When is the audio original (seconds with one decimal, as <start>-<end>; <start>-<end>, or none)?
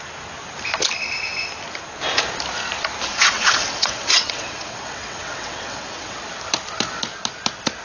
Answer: 0.0-3.1; 6.2-7.8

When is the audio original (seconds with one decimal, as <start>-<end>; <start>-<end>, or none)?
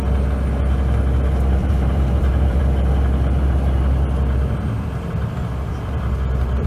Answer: 0.0-1.6; 2.6-6.7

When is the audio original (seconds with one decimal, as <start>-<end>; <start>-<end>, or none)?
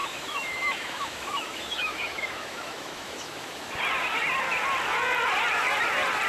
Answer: 3.8-6.3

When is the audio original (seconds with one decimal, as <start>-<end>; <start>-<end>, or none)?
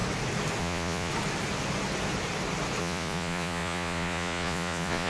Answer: 0.0-0.6; 1.1-2.8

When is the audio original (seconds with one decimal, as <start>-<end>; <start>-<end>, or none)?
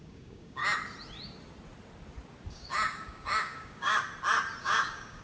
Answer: 0.6-2.5; 3.9-4.6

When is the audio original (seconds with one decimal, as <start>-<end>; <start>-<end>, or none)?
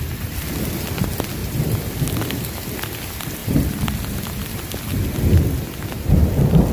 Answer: 0.0-1.4; 2.0-3.4; 5.6-6.7